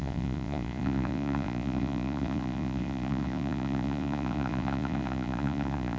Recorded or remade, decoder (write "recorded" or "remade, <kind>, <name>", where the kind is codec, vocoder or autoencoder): remade, vocoder, Vocos